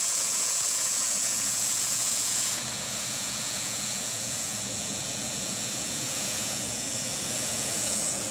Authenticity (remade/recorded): remade